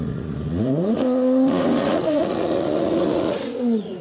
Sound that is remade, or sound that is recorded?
remade